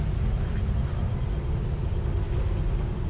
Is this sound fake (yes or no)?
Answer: no